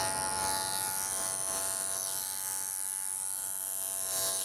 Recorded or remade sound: recorded